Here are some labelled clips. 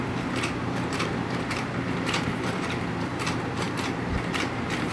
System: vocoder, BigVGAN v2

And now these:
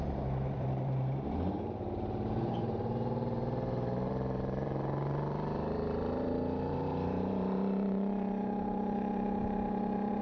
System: vocoder, BigVGAN v2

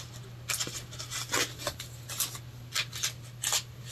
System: none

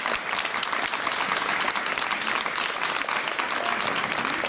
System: none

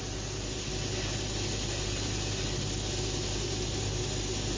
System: none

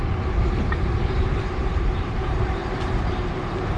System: vocoder, BigVGAN v2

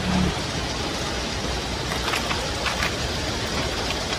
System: none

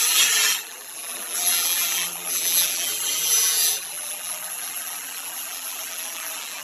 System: vocoder, BigVGAN v2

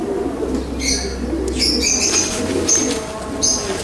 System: vocoder, BigVGAN v2